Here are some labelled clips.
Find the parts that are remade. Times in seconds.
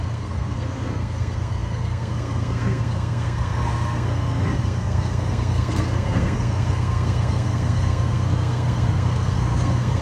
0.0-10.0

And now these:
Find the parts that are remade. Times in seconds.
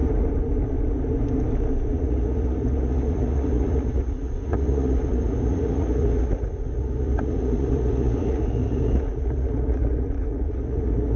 1.9-11.2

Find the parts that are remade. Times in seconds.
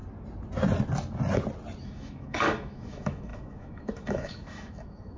1.8-5.2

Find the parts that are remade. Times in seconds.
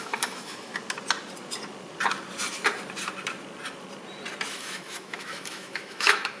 0.0-0.7; 4.5-6.4